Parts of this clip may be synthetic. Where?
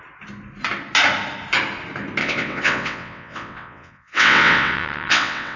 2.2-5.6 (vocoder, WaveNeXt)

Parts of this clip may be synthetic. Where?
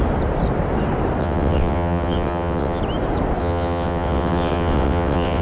1.2-2.8 (vocoder, WaveNeXt); 3.4-5.4